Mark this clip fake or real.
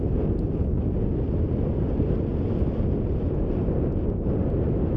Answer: real